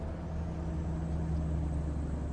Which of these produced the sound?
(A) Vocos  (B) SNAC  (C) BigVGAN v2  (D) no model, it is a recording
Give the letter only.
D